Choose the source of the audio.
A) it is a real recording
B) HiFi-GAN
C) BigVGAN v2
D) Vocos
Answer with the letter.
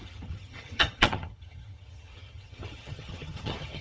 B